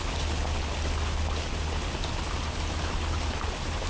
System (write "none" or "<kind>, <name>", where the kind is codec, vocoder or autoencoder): none